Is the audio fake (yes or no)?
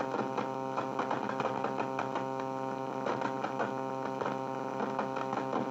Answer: no